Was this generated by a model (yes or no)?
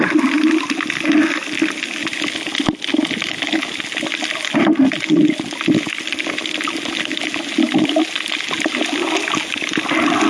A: no